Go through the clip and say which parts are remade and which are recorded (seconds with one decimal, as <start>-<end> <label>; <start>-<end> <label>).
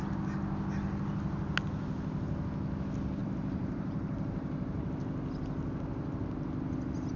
0.0-3.2 recorded; 3.2-4.9 remade; 4.9-7.2 recorded